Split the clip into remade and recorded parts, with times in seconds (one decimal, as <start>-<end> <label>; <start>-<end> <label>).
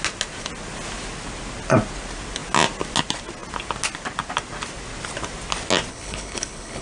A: 0.0-5.9 recorded; 5.9-6.8 remade